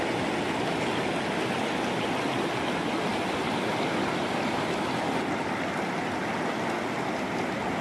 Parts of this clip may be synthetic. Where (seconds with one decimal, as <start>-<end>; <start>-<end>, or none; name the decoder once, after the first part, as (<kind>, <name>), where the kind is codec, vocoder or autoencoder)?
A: none